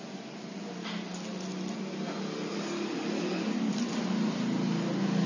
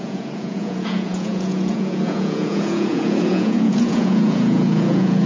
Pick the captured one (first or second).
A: first